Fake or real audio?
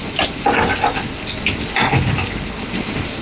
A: real